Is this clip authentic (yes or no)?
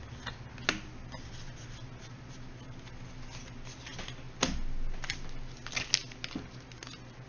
yes